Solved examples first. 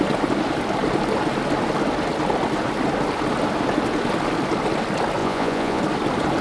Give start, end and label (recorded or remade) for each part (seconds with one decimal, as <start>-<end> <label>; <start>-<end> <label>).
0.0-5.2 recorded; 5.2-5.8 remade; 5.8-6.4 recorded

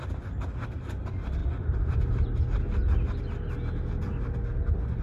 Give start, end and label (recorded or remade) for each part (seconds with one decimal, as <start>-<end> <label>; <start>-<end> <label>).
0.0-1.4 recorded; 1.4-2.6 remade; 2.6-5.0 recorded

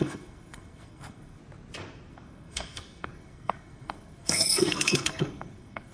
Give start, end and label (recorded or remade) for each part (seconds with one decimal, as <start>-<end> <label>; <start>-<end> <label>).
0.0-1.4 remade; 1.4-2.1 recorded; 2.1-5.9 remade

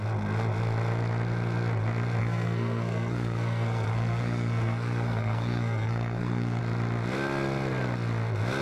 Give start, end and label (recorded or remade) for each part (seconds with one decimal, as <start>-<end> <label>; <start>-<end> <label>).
0.0-2.2 recorded; 2.2-6.6 remade; 6.6-8.6 recorded